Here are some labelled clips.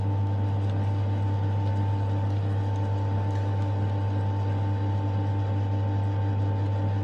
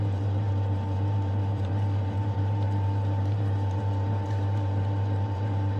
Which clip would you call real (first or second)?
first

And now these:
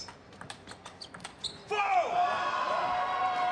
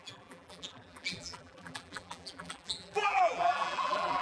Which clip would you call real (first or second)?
first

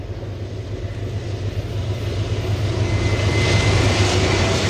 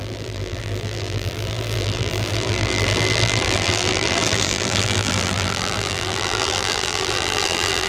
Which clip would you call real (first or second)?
first